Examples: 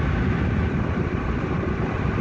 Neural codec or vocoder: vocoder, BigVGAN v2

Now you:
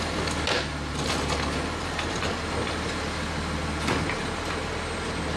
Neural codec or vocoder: none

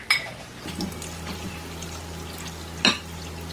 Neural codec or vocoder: none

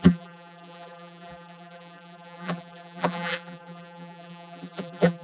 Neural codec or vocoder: vocoder, BigVGAN v2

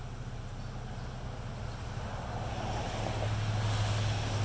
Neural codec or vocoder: none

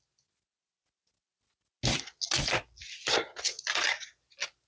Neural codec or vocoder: none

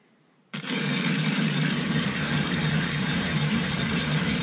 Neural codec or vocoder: vocoder, BigVGAN v2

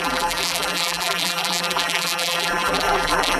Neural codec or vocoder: vocoder, BigVGAN v2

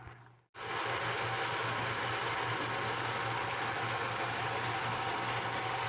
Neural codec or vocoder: none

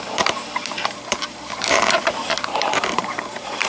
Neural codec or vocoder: vocoder, BigVGAN v2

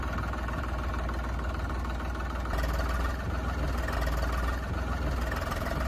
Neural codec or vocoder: none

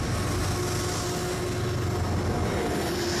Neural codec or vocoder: none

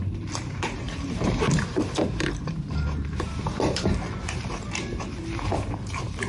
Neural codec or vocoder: vocoder, BigVGAN v2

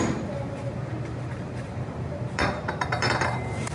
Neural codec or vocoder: vocoder, BigVGAN v2